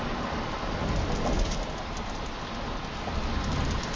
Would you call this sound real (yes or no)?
yes